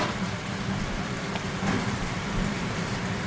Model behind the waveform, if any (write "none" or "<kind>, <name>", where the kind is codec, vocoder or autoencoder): vocoder, BigVGAN v2